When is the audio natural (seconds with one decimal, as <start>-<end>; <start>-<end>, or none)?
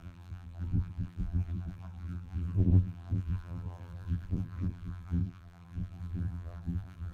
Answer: none